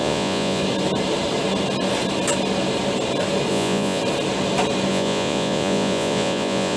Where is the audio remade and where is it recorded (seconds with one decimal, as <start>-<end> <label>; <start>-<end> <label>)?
0.0-0.6 remade; 0.6-3.5 recorded; 3.5-4.0 remade; 4.0-4.9 recorded; 4.9-6.8 remade